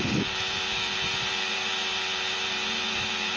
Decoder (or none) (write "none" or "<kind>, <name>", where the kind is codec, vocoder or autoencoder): vocoder, BigVGAN v2